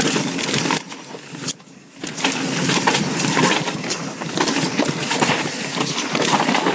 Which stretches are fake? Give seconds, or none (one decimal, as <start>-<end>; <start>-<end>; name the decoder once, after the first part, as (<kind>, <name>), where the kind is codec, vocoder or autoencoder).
none